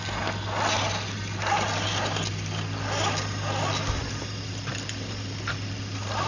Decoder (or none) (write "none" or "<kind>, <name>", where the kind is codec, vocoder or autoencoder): none